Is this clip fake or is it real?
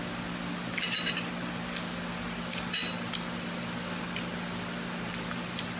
real